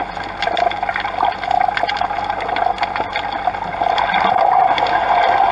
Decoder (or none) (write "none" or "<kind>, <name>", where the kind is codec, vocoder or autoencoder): none